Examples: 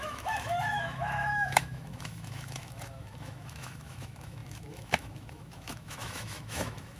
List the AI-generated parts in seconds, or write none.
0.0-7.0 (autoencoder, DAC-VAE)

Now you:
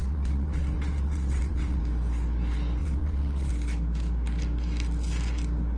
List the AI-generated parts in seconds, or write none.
0.0-1.8 (vocoder, WaveNeXt); 2.8-3.5

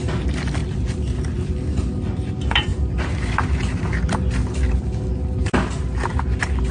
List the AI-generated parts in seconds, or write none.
none

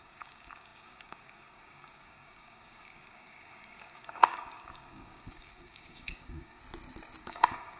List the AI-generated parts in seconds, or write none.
0.0-6.6 (codec, DAC); 7.2-7.8

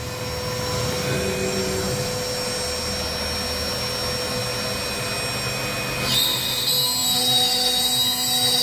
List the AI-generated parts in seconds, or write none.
none